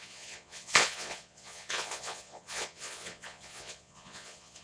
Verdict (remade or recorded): remade